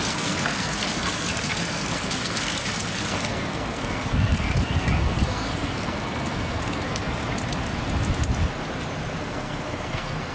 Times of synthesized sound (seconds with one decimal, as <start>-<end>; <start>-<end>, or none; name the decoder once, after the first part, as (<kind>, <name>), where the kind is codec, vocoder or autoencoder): 0.0-7.2 (codec, SNAC); 9.2-10.3

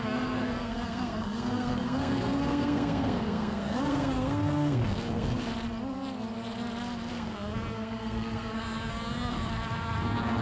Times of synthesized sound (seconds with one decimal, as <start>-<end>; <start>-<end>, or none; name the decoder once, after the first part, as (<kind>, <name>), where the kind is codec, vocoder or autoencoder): 0.0-5.5 (codec, SNAC); 7.1-10.4

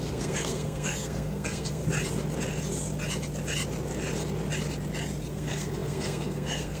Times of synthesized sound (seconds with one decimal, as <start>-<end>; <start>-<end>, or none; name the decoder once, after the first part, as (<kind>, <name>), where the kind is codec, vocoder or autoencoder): 0.0-1.8 (codec, SNAC); 5.3-6.8

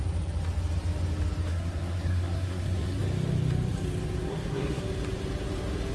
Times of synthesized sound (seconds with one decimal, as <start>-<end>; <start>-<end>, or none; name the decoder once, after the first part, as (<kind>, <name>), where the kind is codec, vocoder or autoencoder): 1.5-3.0 (codec, SNAC); 4.3-4.8

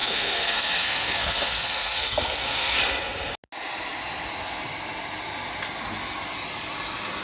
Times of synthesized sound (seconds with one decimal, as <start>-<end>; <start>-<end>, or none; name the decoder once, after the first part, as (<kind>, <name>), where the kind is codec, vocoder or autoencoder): 0.0-2.8 (codec, SNAC)

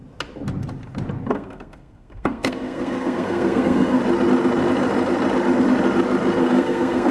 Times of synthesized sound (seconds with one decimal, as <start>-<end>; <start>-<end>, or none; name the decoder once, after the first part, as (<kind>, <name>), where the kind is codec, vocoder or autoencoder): 1.3-4.0 (codec, SNAC); 6.4-7.1

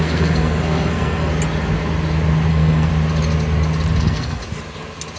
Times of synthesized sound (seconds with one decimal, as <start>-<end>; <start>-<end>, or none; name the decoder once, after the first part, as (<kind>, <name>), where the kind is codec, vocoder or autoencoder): 0.0-1.3 (codec, SNAC); 2.5-2.9; 4.0-4.4